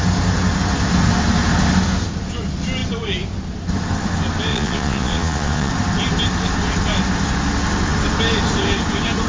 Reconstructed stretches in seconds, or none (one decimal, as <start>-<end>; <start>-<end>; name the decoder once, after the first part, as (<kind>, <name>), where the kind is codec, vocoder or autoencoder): 4.5-5.7 (vocoder, Vocos)